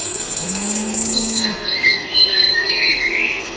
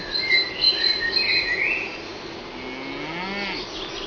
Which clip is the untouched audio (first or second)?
second